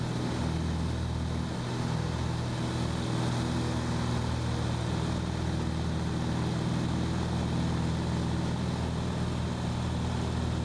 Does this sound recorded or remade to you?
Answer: recorded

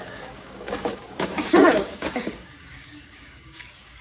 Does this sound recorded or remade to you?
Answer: remade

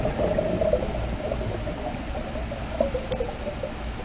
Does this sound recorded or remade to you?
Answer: recorded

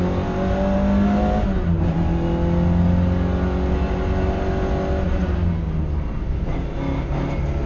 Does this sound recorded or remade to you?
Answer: recorded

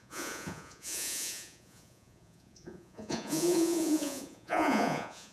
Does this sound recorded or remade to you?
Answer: remade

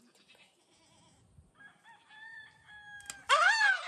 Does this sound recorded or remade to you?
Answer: recorded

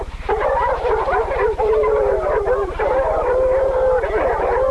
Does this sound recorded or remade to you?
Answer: remade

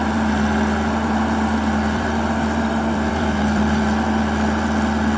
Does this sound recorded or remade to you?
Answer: remade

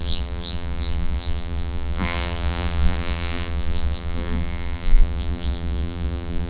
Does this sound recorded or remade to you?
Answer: remade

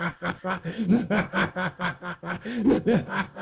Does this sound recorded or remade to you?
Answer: remade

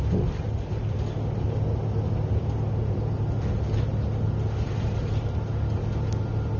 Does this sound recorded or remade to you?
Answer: recorded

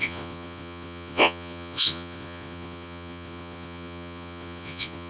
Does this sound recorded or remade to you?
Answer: remade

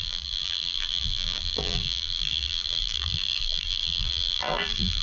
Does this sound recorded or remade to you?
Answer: remade